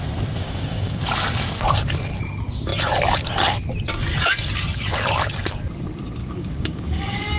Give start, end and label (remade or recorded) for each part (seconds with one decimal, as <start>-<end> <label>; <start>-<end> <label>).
0.0-0.4 recorded; 0.4-1.0 remade; 1.0-6.2 recorded; 6.2-7.4 remade